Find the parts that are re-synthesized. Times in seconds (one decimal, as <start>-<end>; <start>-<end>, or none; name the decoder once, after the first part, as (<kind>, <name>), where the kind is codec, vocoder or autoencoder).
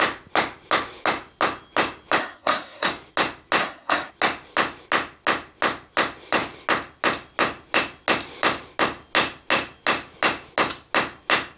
2.2-2.9 (codec, SNAC); 3.6-4.1